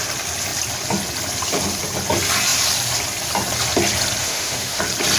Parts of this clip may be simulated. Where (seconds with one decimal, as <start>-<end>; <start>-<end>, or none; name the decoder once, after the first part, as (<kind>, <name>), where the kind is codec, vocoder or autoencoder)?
4.2-4.8 (autoencoder, DAC-VAE)